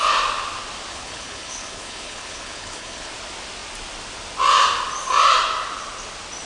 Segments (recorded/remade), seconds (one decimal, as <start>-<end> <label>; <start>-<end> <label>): 0.0-0.9 recorded; 0.9-3.1 remade; 3.1-6.5 recorded

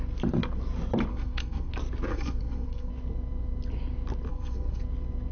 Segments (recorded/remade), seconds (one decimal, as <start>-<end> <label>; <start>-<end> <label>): 0.0-1.1 recorded; 1.1-1.7 remade; 1.7-2.1 recorded; 2.1-2.9 remade; 2.9-4.3 recorded; 4.3-4.8 remade; 4.8-5.3 recorded

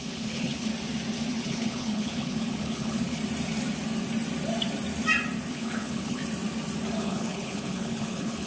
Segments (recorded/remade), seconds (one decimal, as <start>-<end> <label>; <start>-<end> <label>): 0.0-0.7 remade; 0.7-1.4 recorded; 1.4-3.2 remade; 3.2-5.5 recorded; 5.5-6.2 remade; 6.2-7.0 recorded; 7.0-8.5 remade

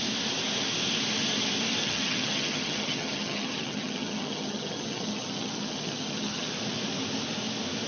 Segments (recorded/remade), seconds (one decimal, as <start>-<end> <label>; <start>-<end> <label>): 0.0-1.8 recorded; 1.8-6.5 remade; 6.5-7.9 recorded

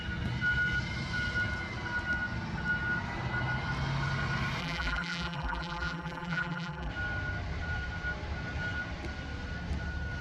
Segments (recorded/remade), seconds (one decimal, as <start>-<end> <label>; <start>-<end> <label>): 0.0-4.6 recorded; 4.6-6.9 remade; 6.9-10.2 recorded

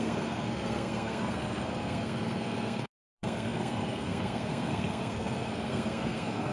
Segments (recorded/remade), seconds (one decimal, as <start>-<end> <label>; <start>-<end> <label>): 0.0-6.5 remade

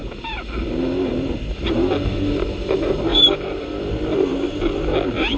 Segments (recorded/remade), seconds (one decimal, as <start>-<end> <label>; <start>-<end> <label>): 0.0-3.1 recorded; 3.1-3.8 remade; 3.8-4.3 recorded; 4.3-4.9 remade; 4.9-5.4 recorded